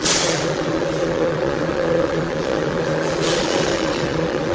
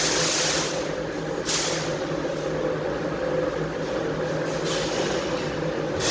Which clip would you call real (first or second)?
second